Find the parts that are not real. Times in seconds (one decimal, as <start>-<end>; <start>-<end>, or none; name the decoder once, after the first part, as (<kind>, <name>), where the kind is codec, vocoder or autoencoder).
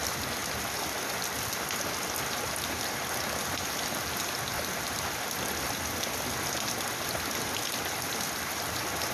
none